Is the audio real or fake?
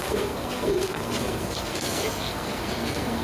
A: fake